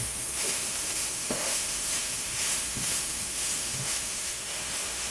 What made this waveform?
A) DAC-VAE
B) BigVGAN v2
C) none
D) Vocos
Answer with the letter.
A